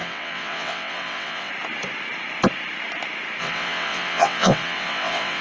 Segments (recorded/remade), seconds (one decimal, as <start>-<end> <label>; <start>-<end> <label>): 0.0-1.5 remade; 1.5-3.4 recorded; 3.4-5.4 remade